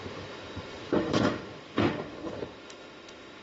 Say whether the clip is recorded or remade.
remade